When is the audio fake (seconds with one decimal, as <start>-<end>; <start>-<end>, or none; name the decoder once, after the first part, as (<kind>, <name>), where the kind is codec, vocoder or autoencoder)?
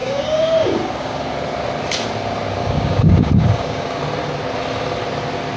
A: 0.0-1.3 (codec, DAC); 2.6-4.0